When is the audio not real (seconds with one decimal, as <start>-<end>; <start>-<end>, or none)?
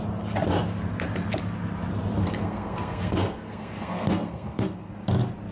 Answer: 2.2-4.9